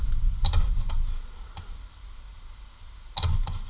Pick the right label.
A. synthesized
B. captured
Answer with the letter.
B